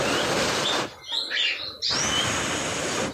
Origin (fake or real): real